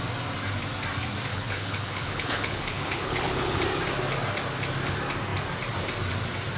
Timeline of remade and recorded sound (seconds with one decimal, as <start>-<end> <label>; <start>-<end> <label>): 0.0-1.3 recorded; 1.3-3.6 remade; 3.6-6.6 recorded

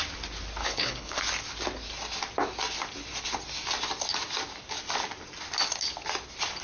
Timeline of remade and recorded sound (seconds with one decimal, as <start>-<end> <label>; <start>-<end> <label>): 0.0-0.6 recorded; 0.6-1.2 remade; 1.2-6.6 recorded

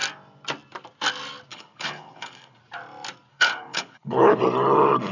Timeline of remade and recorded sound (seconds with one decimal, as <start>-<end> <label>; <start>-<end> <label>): 0.0-1.5 recorded; 1.5-2.6 remade; 2.6-3.3 recorded; 3.3-4.4 remade; 4.4-5.1 recorded

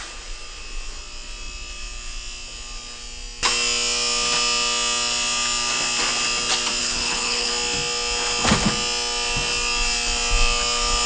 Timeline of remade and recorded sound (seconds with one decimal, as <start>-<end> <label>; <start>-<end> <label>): 0.0-6.8 recorded; 6.8-7.5 remade; 7.5-11.1 recorded

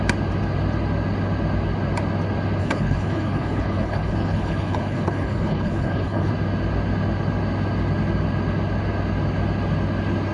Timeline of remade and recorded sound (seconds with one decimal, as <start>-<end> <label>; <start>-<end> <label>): 0.0-2.6 recorded; 2.6-6.3 remade; 6.3-10.3 recorded

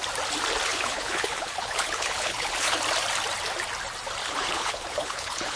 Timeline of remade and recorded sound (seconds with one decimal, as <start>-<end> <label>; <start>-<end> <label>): 0.0-0.7 recorded; 0.7-2.8 remade; 2.8-4.2 recorded; 4.2-5.6 remade

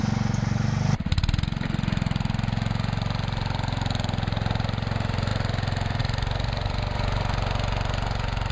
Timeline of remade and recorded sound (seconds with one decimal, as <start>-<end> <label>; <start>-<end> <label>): 0.0-8.5 recorded

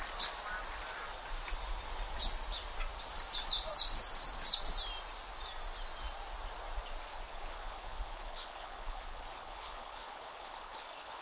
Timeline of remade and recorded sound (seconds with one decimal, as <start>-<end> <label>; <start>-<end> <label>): 0.0-7.1 recorded; 7.1-11.2 remade